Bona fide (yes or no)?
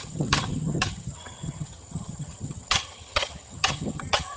no